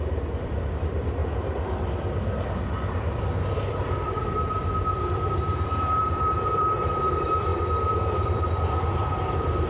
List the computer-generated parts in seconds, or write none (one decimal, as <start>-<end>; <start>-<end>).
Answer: 0.0-1.2; 1.8-9.7